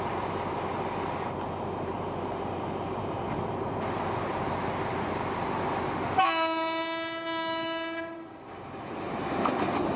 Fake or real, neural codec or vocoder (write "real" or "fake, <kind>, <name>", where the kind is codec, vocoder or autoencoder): real